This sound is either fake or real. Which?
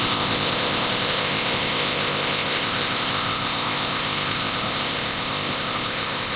fake